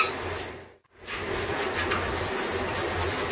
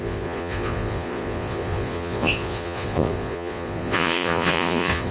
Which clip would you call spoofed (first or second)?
second